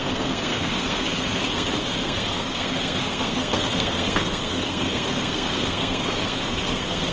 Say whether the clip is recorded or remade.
remade